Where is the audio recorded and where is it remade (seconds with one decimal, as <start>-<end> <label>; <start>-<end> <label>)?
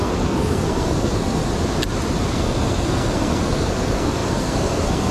0.0-1.4 remade; 1.4-2.3 recorded; 2.3-5.1 remade